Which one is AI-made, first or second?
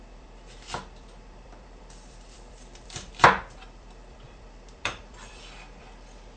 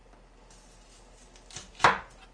first